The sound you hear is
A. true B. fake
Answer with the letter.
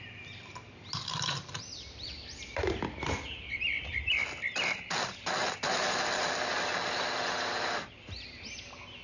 A